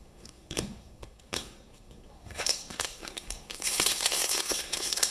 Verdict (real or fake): fake